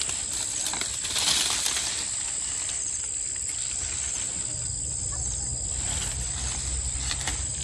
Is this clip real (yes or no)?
yes